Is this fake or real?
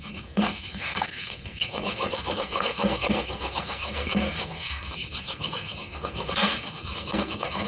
fake